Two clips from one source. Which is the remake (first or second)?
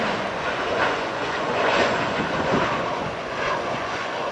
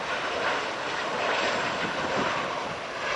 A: first